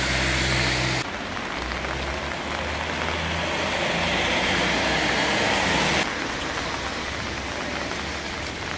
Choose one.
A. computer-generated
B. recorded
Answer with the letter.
B